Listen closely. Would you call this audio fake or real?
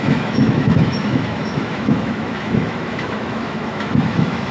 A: fake